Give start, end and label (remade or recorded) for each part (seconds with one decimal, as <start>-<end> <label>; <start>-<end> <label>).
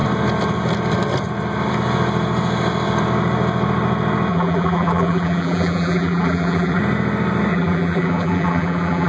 0.0-4.3 recorded; 4.3-6.8 remade; 6.8-7.5 recorded; 7.5-9.1 remade